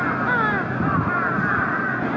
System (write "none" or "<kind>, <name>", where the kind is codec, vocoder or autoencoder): none